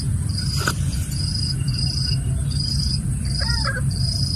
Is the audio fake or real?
fake